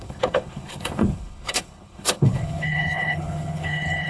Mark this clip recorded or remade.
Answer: remade